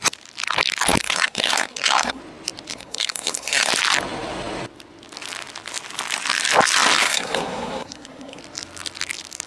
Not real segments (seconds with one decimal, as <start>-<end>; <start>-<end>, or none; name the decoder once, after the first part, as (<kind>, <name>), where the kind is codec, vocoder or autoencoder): 1.0-2.2 (codec, SNAC); 2.7-3.7; 7.0-8.4